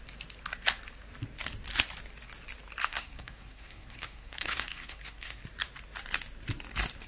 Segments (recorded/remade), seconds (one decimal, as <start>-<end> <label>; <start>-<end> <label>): 0.0-2.8 recorded; 2.8-5.4 remade; 5.4-7.1 recorded